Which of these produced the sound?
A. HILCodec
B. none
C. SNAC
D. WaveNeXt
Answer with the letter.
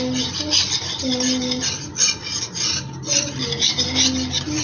B